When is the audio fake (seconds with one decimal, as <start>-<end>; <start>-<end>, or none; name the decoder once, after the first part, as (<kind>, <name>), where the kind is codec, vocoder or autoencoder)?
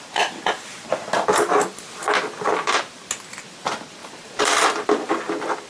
2.5-3.1 (vocoder, BigVGAN v2); 4.0-5.1